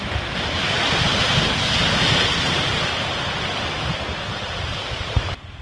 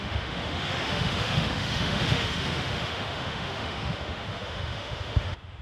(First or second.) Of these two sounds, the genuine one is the first